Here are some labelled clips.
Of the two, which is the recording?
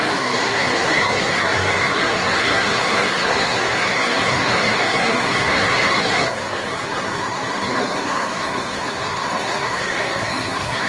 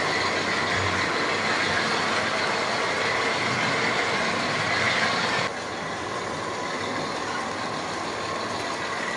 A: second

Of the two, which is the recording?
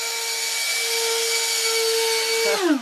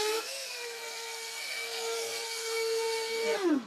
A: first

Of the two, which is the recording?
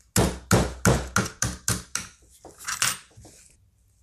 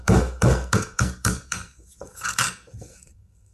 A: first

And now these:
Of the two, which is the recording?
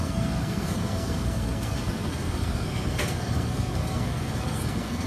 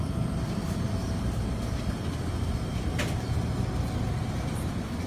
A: second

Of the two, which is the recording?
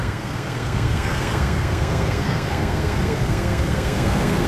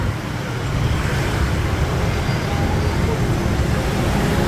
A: second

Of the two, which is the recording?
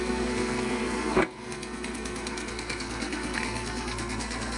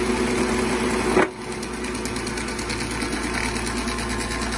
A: second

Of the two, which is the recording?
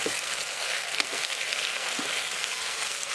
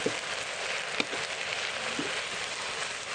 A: second